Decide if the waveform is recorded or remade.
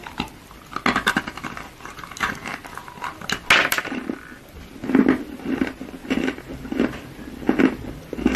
recorded